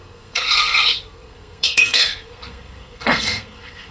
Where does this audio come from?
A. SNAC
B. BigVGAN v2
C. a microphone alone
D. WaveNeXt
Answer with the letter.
A